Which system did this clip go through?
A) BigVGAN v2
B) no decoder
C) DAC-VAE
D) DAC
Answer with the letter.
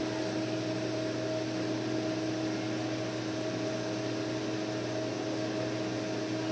B